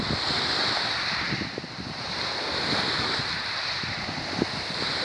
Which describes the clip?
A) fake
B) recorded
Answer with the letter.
A